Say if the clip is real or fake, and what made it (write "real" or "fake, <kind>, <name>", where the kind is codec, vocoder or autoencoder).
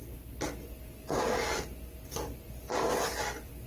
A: real